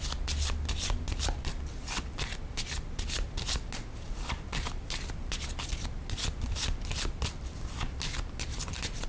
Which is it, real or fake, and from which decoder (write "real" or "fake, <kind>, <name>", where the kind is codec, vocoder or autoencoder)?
real